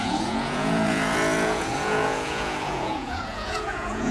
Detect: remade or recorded remade